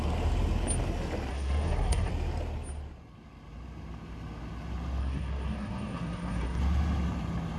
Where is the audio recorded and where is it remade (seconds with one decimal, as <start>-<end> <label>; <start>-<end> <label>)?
0.0-1.3 recorded; 1.3-2.1 remade; 2.1-5.0 recorded; 5.0-6.6 remade; 6.6-7.6 recorded